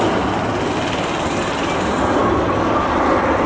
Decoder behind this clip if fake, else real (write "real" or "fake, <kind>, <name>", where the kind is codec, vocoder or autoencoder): real